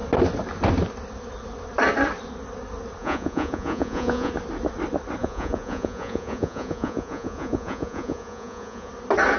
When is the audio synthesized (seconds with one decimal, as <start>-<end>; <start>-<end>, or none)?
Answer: 3.0-4.3; 5.2-8.9